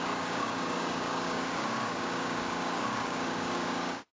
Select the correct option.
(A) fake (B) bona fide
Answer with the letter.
A